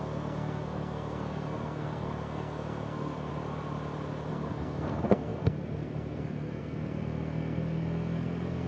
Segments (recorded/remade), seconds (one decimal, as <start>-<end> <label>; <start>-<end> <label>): 0.0-3.3 remade; 3.3-4.3 recorded; 4.3-8.7 remade

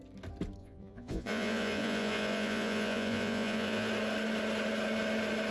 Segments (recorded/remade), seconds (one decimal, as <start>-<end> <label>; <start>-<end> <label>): 0.0-0.6 recorded; 0.6-3.9 remade; 3.9-5.5 recorded

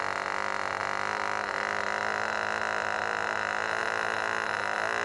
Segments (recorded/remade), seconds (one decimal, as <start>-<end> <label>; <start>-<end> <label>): 0.0-5.0 recorded

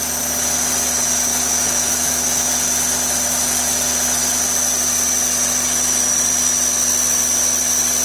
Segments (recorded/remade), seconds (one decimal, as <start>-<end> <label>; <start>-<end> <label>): 0.0-1.3 recorded; 1.3-2.5 remade; 2.5-8.0 recorded